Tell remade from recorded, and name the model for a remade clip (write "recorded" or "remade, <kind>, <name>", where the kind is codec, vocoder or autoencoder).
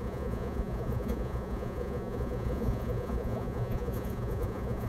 remade, vocoder, Vocos